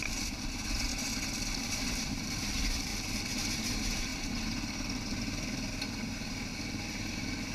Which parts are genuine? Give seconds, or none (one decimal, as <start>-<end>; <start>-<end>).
0.9-1.6; 2.9-3.5; 4.1-6.1; 6.5-7.1